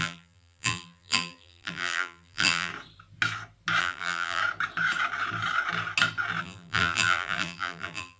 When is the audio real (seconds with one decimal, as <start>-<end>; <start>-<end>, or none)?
2.7-3.8; 4.4-6.4